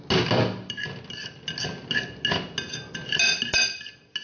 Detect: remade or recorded recorded